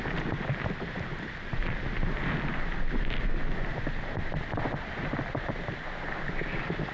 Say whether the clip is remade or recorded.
recorded